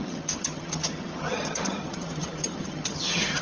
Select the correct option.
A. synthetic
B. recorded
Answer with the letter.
A